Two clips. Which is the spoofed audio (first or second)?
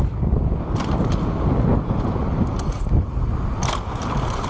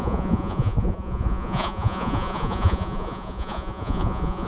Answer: second